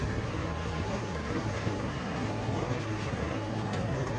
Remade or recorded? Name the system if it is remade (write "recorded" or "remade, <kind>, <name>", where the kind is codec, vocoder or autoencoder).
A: remade, codec, SNAC